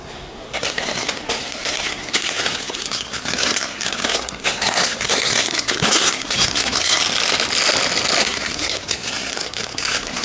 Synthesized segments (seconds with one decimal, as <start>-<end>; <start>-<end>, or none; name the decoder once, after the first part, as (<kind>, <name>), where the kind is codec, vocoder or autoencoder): 0.0-7.0 (codec, SNAC); 8.2-10.2